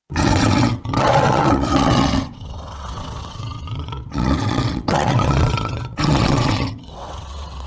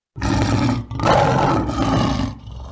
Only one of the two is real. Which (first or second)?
second